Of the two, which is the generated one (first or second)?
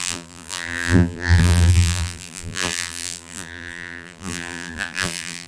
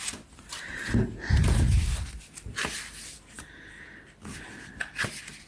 first